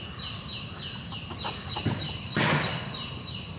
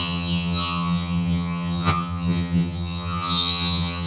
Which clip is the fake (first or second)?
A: second